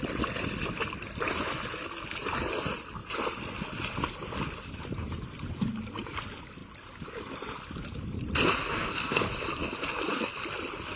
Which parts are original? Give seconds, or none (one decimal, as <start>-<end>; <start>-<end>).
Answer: 0.0-8.6; 9.2-11.0